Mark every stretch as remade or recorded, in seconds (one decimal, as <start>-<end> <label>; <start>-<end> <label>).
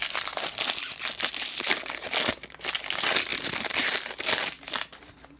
0.0-5.4 recorded